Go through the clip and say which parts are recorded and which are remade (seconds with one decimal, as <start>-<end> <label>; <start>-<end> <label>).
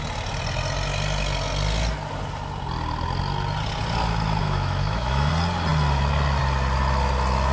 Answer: 0.0-4.4 recorded; 4.4-5.3 remade; 5.3-7.5 recorded